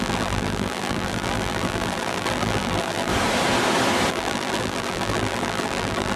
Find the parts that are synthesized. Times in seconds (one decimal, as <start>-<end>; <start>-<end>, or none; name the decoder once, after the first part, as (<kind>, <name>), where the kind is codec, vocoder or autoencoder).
0.0-3.1 (vocoder, BigVGAN v2); 4.1-6.2